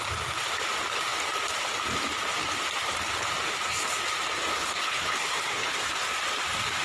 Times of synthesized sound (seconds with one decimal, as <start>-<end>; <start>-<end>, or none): 4.5-5.9